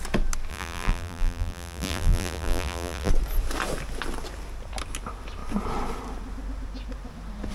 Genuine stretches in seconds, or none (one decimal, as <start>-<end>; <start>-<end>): 0.0-0.5; 3.1-7.5